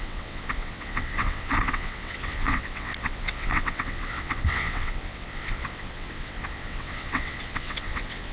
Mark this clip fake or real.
fake